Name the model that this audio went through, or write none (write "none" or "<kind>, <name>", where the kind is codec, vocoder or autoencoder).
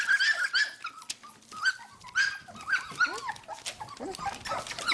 none